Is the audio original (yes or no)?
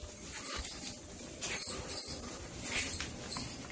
yes